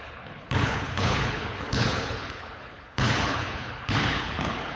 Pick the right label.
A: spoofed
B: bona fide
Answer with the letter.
A